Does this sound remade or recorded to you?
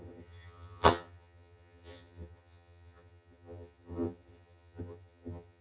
remade